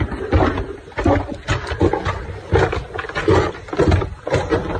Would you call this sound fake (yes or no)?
no